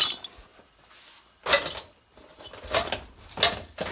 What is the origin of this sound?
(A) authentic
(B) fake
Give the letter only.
A